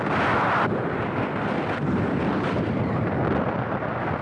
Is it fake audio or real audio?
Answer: real